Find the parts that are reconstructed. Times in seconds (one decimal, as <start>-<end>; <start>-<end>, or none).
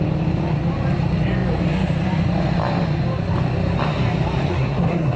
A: 4.4-5.2